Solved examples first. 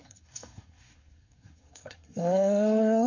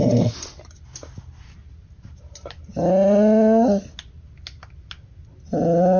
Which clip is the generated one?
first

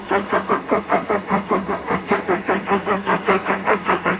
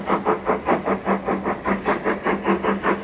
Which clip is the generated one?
first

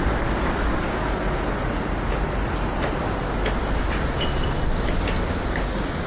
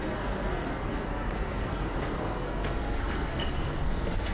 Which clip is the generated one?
second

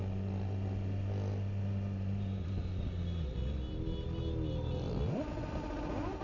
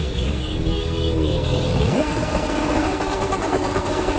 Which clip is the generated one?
second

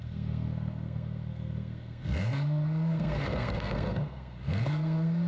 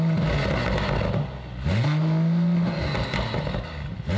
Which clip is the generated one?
first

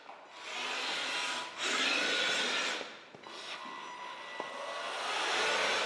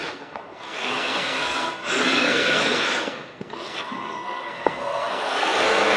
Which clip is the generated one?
second